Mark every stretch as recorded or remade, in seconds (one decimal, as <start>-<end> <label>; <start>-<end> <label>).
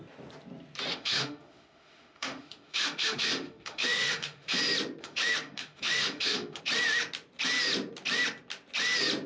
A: 0.0-0.9 recorded; 0.9-4.6 remade; 4.6-5.0 recorded; 5.0-6.6 remade; 6.6-9.3 recorded